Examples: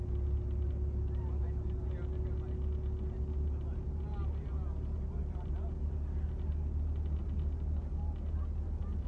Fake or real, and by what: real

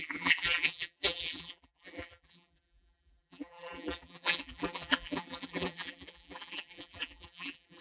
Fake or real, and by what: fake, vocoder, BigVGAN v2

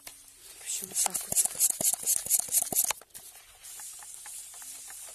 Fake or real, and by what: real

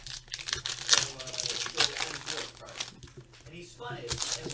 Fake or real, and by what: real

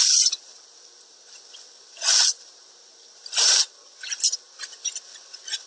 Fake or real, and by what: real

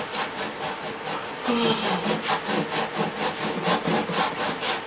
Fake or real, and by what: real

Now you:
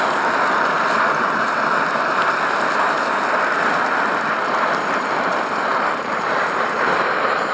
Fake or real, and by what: real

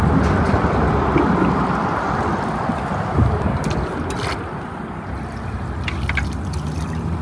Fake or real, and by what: real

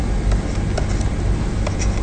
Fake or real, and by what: real